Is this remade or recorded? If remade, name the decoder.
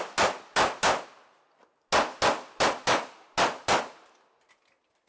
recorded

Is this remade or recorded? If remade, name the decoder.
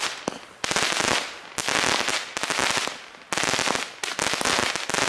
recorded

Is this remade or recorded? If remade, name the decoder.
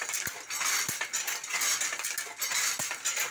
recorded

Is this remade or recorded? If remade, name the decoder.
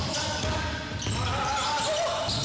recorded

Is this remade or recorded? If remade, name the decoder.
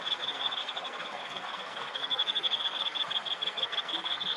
remade, codec, SNAC